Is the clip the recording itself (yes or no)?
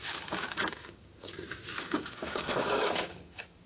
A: no